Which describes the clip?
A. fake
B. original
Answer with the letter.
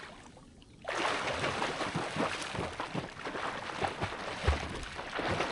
B